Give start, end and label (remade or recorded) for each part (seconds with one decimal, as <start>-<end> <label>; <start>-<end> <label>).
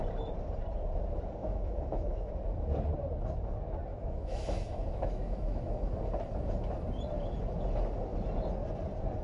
0.0-1.4 recorded; 1.4-2.3 remade; 2.3-3.9 recorded; 3.9-5.9 remade; 5.9-9.2 recorded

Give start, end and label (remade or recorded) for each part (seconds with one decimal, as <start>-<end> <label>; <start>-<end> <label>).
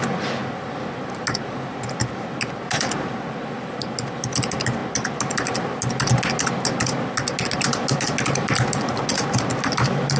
0.0-10.2 recorded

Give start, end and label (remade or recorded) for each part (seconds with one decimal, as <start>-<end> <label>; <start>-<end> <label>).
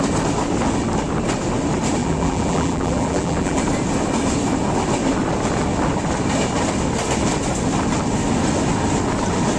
0.0-2.0 recorded; 2.0-3.6 remade; 3.6-9.6 recorded